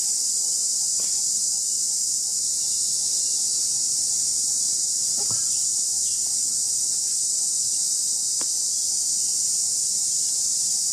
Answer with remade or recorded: recorded